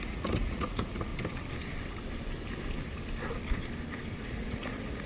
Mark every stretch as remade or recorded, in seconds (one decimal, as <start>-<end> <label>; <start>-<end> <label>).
0.0-1.1 remade; 1.1-4.2 recorded; 4.2-5.1 remade